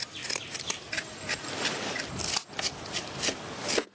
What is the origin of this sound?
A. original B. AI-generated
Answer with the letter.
A